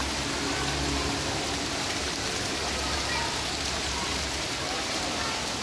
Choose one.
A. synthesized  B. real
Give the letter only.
B